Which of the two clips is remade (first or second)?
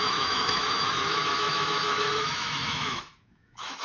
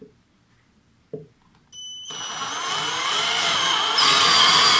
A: first